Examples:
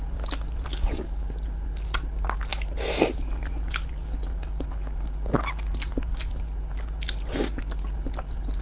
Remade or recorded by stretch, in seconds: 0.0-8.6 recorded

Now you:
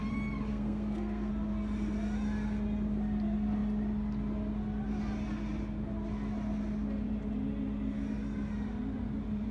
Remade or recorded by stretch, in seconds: 0.0-0.5 recorded; 0.5-1.3 remade; 1.3-9.5 recorded

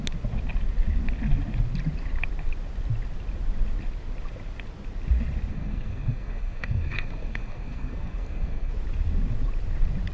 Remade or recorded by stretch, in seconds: 0.0-5.5 recorded; 5.5-8.7 remade; 8.7-10.1 recorded